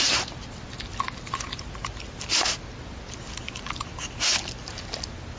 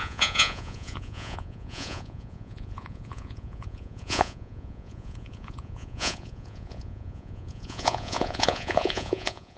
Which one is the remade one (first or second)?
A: second